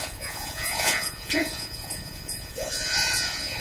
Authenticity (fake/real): fake